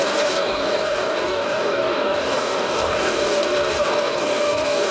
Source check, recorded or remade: remade